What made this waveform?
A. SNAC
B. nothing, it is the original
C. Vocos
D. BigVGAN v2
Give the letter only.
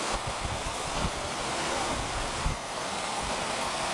A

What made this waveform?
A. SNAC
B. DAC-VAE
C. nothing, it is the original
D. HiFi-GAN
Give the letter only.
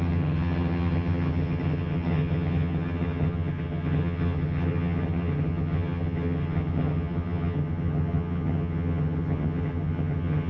D